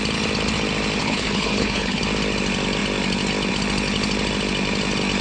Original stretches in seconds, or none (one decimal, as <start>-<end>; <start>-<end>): 0.0-1.0; 2.0-5.2